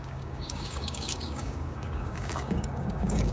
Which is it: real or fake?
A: fake